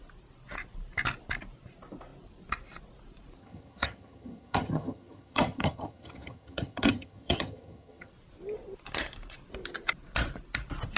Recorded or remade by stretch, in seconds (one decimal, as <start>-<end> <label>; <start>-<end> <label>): 0.0-3.4 recorded; 3.4-8.1 remade; 8.1-11.0 recorded